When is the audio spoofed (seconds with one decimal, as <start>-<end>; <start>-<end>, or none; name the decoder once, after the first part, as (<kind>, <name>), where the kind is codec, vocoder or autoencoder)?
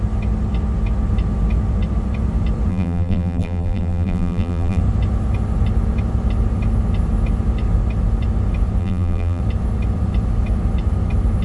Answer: 2.7-4.8 (vocoder, BigVGAN v2); 8.8-9.4